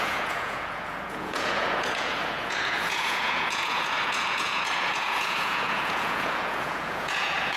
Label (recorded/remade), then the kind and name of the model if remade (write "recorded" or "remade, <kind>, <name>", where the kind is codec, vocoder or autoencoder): remade, vocoder, Vocos